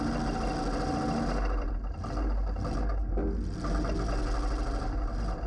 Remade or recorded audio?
recorded